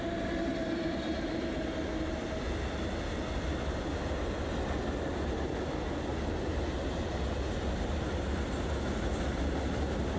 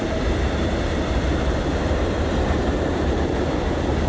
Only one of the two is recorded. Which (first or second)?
first